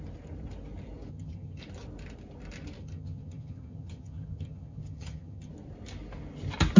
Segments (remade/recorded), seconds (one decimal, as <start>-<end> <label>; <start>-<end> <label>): 0.0-1.1 recorded; 1.1-1.6 remade; 1.6-2.8 recorded; 2.8-5.5 remade; 5.5-6.8 recorded